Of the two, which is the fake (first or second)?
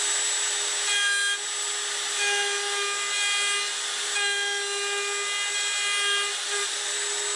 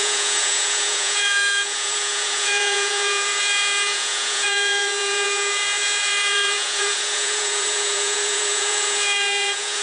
second